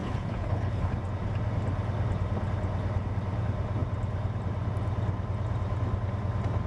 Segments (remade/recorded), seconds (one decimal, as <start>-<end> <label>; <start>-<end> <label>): 0.0-0.9 remade; 0.9-6.7 recorded